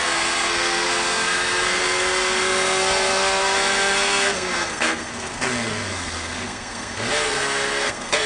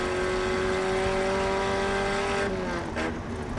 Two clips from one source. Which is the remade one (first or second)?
first